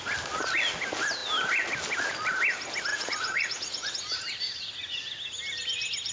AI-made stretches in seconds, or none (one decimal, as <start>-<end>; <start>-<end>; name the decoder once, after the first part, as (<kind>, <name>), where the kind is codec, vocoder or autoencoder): 2.9-3.9 (vocoder, Vocos)